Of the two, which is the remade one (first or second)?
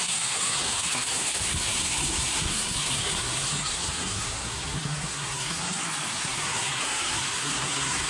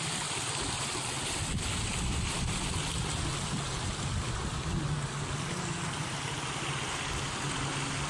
first